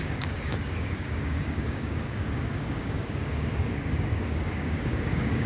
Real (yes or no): no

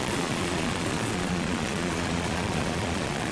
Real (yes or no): no